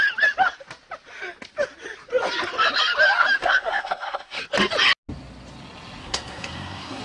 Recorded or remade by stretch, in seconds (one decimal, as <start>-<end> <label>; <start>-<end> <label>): 0.0-3.4 recorded; 3.4-4.4 remade; 4.4-6.0 recorded; 6.0-7.0 remade